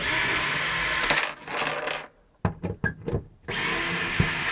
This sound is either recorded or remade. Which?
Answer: recorded